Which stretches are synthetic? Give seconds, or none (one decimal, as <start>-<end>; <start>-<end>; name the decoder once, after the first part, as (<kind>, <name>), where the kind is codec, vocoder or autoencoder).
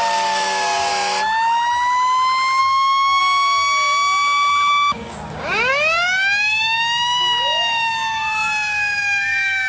0.0-0.9 (codec, DAC); 2.6-3.2; 4.7-9.7